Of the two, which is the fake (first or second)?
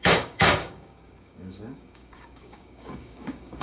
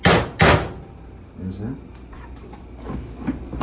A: first